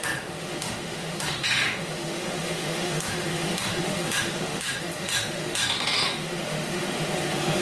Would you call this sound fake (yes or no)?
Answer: yes